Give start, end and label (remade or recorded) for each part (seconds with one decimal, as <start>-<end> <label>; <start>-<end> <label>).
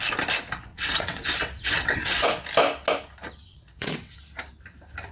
0.0-0.7 recorded; 0.7-2.3 remade; 2.3-3.5 recorded; 3.5-4.2 remade; 4.2-5.1 recorded